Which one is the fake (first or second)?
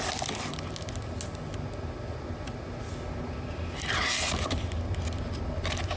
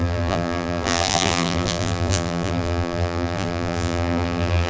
second